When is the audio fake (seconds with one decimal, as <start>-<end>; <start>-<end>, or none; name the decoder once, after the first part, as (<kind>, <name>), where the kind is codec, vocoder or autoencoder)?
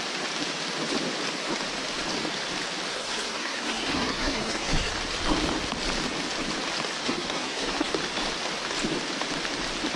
2.9-4.9 (codec, SNAC); 7.0-7.9